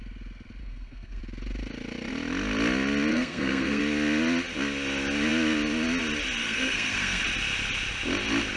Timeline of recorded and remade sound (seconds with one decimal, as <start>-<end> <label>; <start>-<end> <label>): 0.0-0.6 recorded; 0.6-1.2 remade; 1.2-3.1 recorded; 3.1-3.8 remade; 3.8-6.4 recorded; 6.4-7.2 remade; 7.2-8.6 recorded